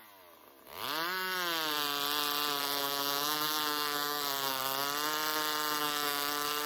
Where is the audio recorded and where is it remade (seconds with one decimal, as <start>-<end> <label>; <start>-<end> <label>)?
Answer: 0.0-2.6 recorded; 2.6-4.6 remade; 4.6-5.8 recorded; 5.8-6.7 remade